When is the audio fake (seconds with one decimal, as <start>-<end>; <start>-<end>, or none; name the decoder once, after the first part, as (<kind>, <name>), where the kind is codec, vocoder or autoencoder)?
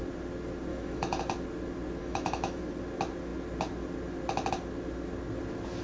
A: 0.7-1.2 (autoencoder, DAC-VAE); 2.0-2.6